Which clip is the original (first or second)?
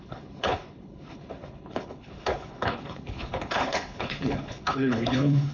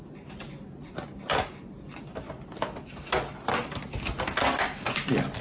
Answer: second